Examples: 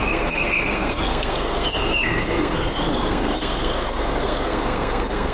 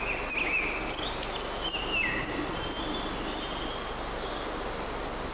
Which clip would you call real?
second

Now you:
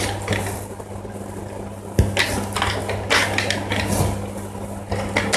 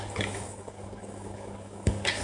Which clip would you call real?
first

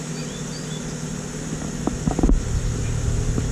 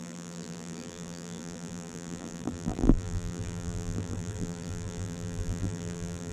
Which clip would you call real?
first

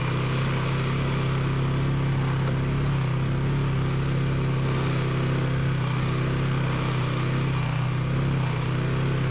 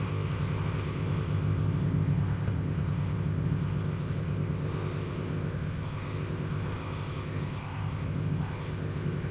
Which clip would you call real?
first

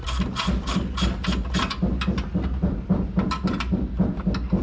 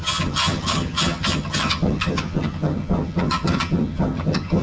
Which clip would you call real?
first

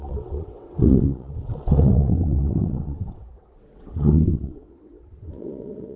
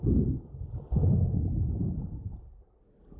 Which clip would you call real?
second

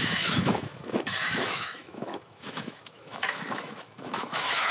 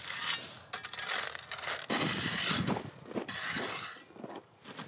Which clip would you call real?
second